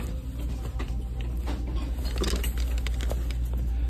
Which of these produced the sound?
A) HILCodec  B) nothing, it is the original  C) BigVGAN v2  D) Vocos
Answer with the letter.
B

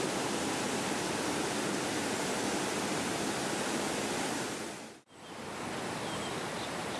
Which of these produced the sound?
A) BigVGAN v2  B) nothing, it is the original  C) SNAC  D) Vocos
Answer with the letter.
B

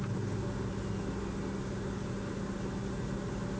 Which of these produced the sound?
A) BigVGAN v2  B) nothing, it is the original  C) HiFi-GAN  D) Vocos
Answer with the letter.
B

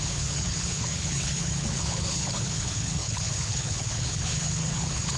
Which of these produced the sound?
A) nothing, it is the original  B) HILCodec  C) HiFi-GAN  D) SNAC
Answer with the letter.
B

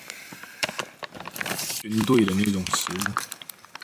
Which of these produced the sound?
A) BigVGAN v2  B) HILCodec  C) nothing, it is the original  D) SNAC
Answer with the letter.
A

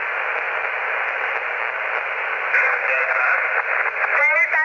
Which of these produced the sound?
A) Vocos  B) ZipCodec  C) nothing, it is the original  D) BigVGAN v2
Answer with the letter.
C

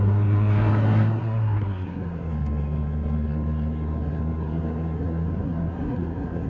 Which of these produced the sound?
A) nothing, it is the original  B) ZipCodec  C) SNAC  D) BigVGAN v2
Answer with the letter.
C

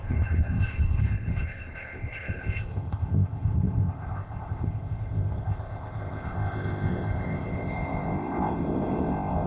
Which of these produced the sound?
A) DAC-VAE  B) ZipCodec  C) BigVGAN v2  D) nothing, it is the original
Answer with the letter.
B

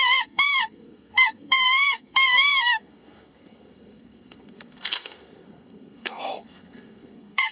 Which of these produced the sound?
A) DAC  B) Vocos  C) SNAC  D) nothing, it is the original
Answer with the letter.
C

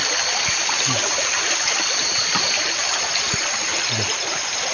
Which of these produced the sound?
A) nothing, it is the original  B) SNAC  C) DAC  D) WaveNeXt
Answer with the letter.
A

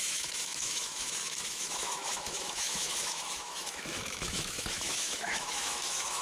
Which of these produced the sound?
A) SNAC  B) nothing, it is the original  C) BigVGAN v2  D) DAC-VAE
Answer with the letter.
D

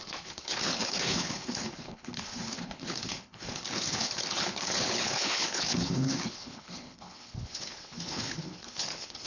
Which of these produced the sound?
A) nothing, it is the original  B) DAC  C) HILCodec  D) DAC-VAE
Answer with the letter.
C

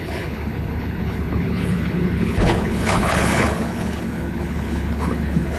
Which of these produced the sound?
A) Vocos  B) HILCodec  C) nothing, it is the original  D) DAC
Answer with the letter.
B